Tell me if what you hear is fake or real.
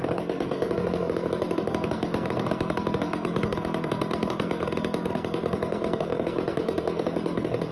fake